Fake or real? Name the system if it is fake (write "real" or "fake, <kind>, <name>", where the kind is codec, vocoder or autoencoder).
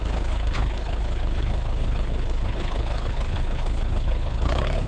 fake, codec, HILCodec